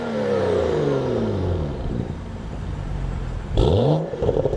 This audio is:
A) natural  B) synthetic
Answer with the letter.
B